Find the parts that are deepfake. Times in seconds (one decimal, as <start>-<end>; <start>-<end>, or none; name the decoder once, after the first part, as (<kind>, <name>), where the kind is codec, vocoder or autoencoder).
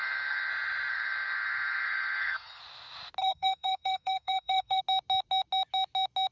0.0-0.5 (codec, SNAC); 0.9-2.6; 3.2-4.8